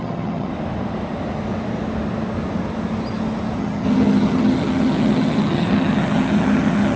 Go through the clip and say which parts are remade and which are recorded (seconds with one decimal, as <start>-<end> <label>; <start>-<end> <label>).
0.0-0.5 remade; 0.5-3.6 recorded; 3.6-7.0 remade